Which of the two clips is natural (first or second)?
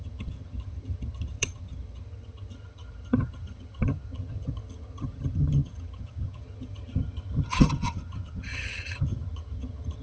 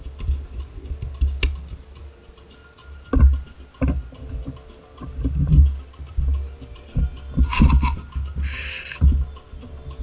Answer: second